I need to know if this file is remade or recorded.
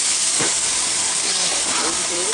remade